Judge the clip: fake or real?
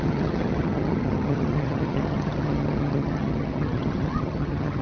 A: fake